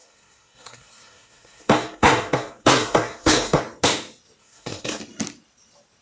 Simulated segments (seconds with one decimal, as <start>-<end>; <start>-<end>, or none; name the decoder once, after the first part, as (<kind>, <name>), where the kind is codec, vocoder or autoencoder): 0.0-3.6 (codec, SNAC); 4.4-5.0